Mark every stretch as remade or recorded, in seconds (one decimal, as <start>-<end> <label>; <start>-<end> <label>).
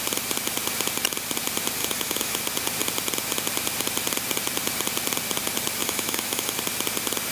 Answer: 0.0-1.8 recorded; 1.8-2.4 remade; 2.4-5.8 recorded; 5.8-6.6 remade; 6.6-7.3 recorded